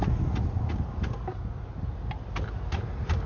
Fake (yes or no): no